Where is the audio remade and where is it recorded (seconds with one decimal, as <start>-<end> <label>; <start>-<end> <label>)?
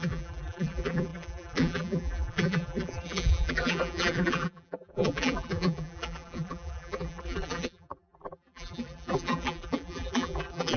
0.0-10.8 remade